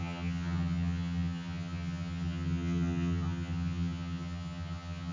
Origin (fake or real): fake